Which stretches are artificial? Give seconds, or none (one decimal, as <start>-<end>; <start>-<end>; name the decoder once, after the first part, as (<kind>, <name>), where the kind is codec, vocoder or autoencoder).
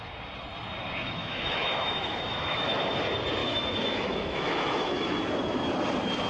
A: 1.2-2.9 (autoencoder, DAC-VAE); 3.4-5.2